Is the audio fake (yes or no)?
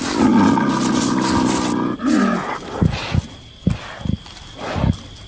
no